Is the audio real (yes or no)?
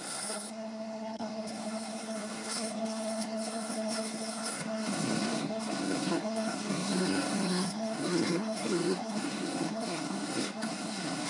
no